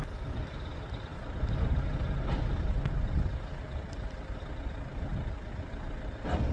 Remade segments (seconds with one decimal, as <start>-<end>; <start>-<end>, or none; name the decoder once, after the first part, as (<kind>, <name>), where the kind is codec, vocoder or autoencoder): none